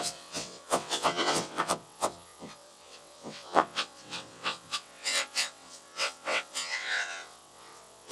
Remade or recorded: remade